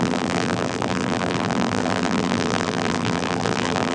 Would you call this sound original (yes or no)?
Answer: no